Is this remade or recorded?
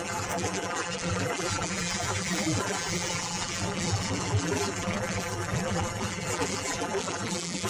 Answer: remade